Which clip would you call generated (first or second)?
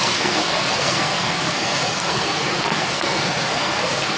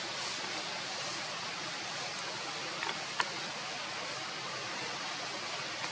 first